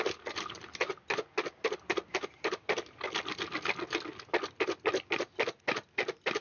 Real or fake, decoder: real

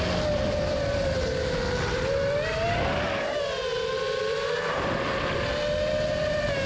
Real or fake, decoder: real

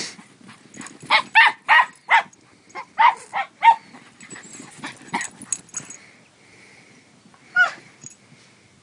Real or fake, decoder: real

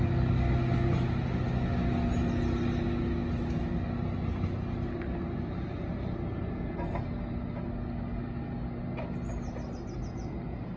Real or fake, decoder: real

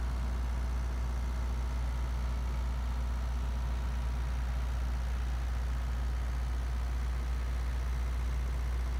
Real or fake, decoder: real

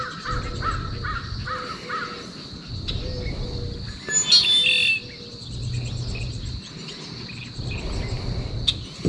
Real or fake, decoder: real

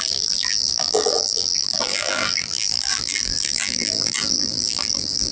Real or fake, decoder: fake, vocoder, BigVGAN v2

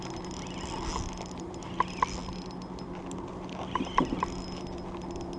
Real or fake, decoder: real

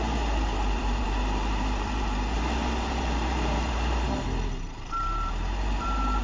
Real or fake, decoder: fake, vocoder, BigVGAN v2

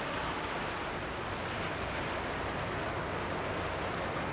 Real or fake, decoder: real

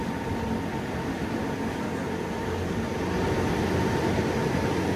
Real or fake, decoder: real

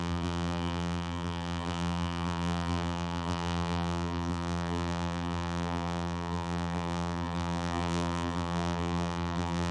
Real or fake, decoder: fake, vocoder, BigVGAN v2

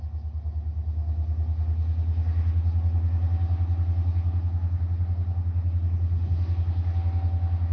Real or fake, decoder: real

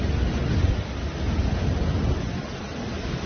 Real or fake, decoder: real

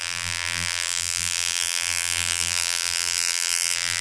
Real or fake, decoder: fake, vocoder, BigVGAN v2